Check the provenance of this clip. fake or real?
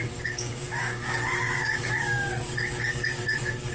fake